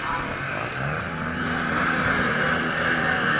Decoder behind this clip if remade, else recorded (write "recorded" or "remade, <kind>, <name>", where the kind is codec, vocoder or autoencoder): recorded